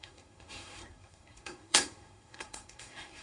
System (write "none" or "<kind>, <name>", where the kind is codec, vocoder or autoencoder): codec, SNAC